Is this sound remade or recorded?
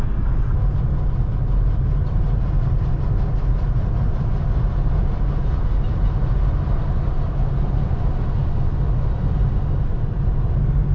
recorded